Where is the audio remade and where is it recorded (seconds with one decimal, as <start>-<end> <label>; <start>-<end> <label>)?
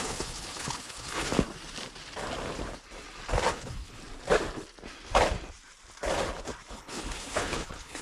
0.0-1.3 remade; 1.3-3.5 recorded; 3.5-4.0 remade; 4.0-6.7 recorded; 6.7-8.0 remade